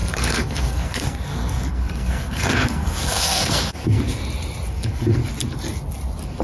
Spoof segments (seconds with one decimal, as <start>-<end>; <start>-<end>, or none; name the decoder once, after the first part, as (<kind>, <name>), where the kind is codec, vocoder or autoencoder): 0.0-4.2 (codec, SNAC); 4.7-5.2